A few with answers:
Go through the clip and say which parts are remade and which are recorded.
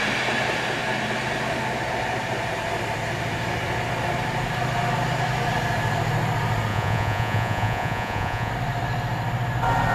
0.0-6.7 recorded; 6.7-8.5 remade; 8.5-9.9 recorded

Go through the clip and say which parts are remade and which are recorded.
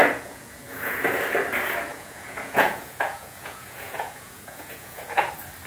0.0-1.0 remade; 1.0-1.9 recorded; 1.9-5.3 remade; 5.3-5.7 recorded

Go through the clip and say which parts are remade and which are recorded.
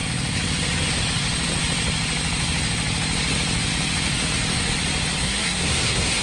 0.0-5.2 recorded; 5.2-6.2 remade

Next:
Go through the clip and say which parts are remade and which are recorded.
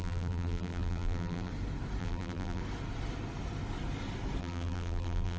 0.0-1.5 remade; 1.5-2.0 recorded; 2.0-2.6 remade; 2.6-4.4 recorded; 4.4-5.4 remade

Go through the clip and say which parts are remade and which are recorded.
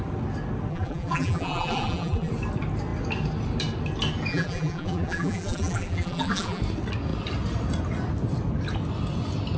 0.0-0.7 recorded; 0.7-2.3 remade; 2.3-4.3 recorded; 4.3-6.6 remade; 6.6-9.6 recorded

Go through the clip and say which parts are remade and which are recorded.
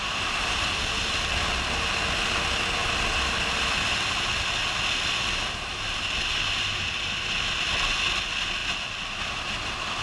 0.0-10.0 recorded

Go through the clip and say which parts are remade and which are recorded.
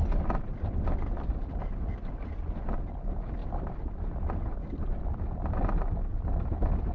0.0-6.9 recorded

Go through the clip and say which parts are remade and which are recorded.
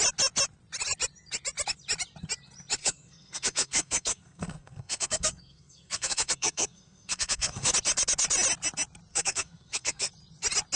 0.0-2.8 recorded; 2.8-7.7 remade; 7.7-9.1 recorded; 9.1-10.1 remade; 10.1-10.8 recorded